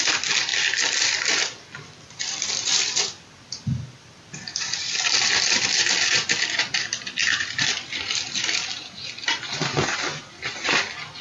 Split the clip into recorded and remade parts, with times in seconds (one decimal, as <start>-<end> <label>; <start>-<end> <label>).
0.0-0.5 recorded; 0.5-4.7 remade; 4.7-7.2 recorded; 7.2-8.4 remade; 8.4-11.2 recorded